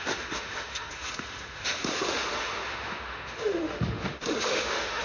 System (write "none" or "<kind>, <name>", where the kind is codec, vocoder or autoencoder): autoencoder, DAC-VAE